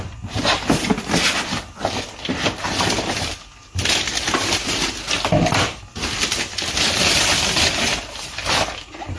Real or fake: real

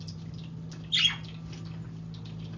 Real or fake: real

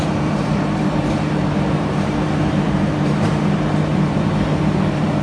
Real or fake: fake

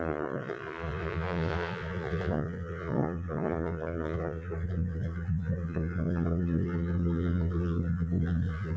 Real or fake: fake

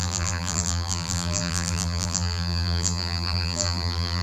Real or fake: fake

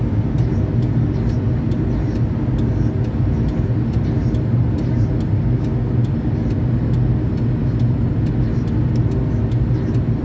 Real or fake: real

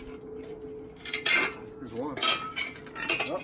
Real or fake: real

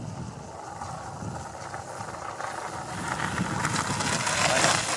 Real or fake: real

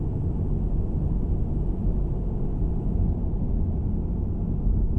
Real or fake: real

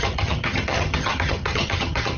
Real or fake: fake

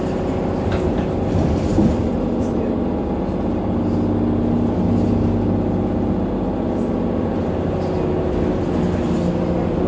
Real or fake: real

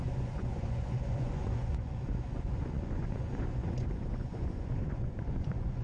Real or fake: fake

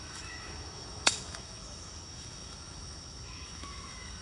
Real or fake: fake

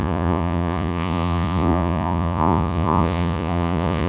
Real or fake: fake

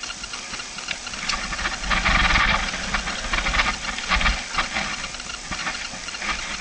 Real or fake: real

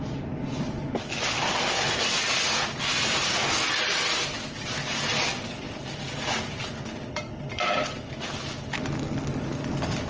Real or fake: real